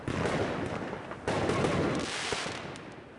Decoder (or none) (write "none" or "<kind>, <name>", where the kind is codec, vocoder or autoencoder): none